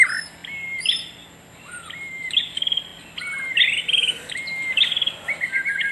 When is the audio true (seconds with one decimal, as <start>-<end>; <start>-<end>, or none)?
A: 0.0-5.9